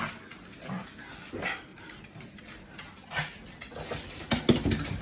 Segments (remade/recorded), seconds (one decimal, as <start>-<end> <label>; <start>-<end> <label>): 0.0-1.7 recorded; 1.7-2.4 remade; 2.4-5.0 recorded